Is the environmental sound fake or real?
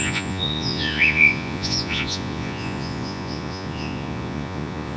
fake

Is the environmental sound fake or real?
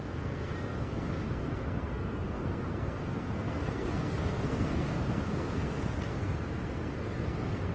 fake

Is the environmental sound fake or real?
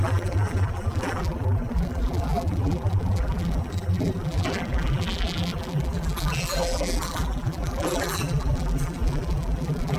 fake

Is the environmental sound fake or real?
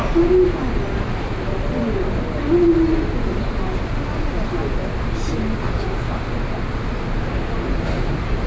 real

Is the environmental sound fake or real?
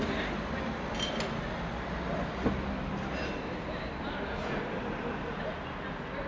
real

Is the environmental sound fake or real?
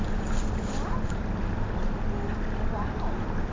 real